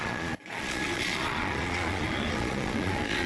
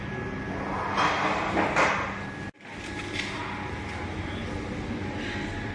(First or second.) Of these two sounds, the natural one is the second